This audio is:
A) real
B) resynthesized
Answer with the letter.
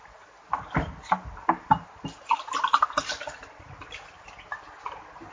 A